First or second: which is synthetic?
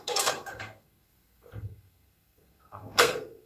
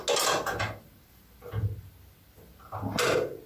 first